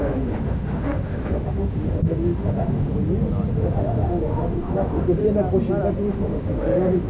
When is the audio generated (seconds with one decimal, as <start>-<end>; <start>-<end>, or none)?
0.0-2.9; 3.5-5.2; 6.1-7.1